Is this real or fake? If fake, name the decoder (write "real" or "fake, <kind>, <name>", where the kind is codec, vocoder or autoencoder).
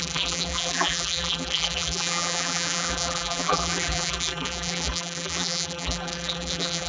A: fake, vocoder, BigVGAN v2